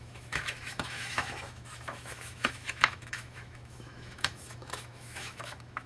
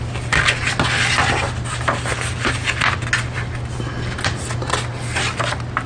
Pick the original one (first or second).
second